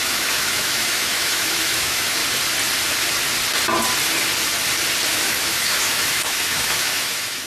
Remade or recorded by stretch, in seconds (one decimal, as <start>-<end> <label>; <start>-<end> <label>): 0.0-2.2 remade; 2.2-5.1 recorded; 5.1-7.5 remade